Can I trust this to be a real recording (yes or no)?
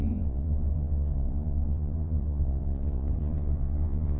no